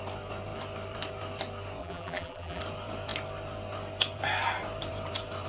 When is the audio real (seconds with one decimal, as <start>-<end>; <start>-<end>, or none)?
0.0-1.8; 2.6-5.5